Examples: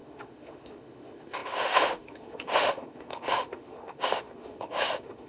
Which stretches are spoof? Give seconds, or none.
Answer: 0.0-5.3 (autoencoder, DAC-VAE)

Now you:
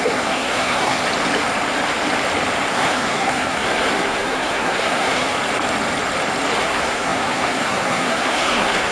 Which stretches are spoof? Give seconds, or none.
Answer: 0.0-1.0 (codec, SNAC); 2.7-5.4; 6.6-8.9

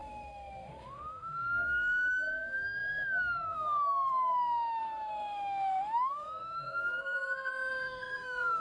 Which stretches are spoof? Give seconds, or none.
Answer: 0.0-8.6 (autoencoder, DAC-VAE)

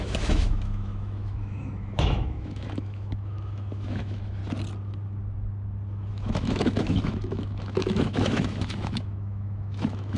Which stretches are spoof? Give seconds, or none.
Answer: 0.0-4.4 (autoencoder, DAC-VAE); 6.1-10.2

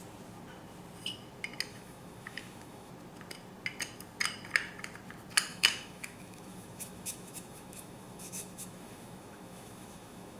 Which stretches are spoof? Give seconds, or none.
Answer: 1.7-2.9 (autoencoder, DAC-VAE); 5.5-10.4